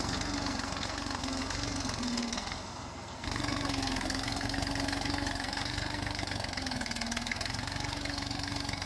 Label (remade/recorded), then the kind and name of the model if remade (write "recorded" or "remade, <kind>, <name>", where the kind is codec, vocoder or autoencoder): remade, codec, SNAC